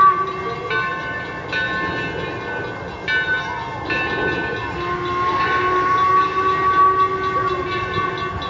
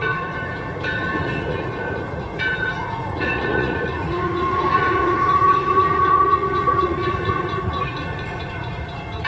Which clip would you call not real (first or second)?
second